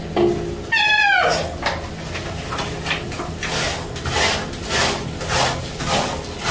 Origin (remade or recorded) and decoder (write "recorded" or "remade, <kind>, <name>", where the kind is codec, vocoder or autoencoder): recorded